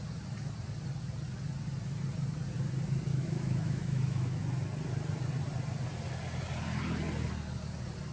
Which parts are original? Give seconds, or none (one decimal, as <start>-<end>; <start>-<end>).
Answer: 0.0-3.1; 4.4-8.1